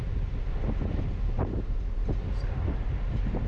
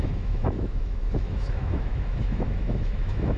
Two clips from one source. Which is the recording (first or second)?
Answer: first